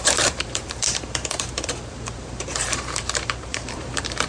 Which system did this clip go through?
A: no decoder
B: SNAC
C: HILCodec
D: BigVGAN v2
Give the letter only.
D